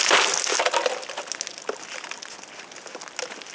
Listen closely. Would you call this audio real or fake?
real